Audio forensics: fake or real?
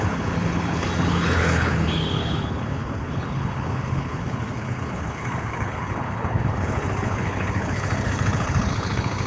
fake